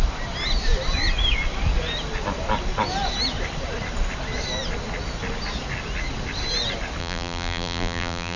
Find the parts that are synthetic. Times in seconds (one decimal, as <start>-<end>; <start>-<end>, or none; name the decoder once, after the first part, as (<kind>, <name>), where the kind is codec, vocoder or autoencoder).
7.0-8.4 (vocoder, BigVGAN v2)